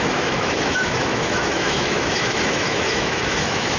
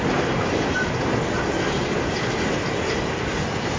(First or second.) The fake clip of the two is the first